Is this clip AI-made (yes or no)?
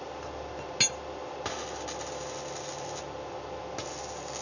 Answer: no